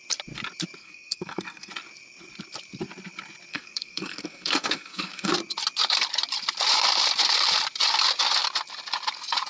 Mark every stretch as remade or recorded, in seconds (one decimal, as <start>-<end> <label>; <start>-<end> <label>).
0.0-0.8 recorded; 0.8-1.7 remade; 1.7-3.5 recorded; 3.5-5.3 remade; 5.3-9.5 recorded